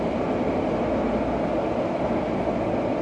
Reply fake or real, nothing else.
real